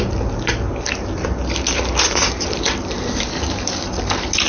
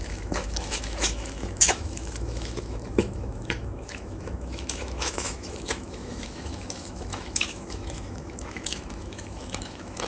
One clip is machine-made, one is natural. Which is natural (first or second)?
first